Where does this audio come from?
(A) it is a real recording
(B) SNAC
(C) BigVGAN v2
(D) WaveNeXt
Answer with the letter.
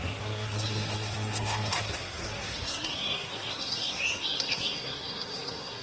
B